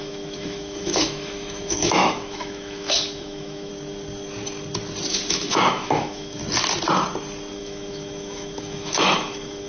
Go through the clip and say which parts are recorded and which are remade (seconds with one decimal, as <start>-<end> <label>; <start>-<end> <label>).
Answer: 0.0-3.7 remade; 3.7-5.1 recorded; 5.1-6.4 remade; 6.4-7.5 recorded; 7.5-9.7 remade